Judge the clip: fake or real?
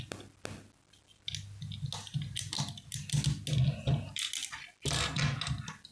real